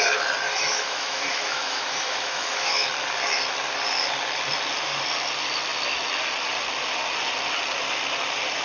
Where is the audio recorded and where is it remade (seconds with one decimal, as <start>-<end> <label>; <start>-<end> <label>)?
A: 0.0-0.5 recorded; 0.5-2.9 remade; 2.9-8.6 recorded